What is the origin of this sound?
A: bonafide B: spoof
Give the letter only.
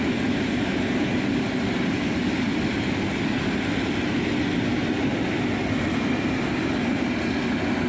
A